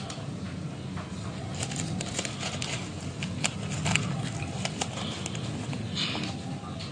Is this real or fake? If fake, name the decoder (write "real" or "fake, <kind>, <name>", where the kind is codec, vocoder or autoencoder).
real